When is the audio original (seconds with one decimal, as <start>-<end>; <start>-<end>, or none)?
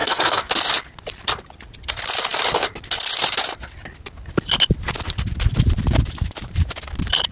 0.5-7.3